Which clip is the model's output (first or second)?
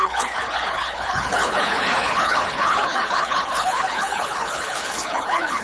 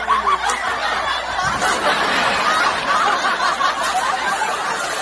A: first